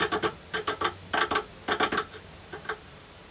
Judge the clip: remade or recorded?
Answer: recorded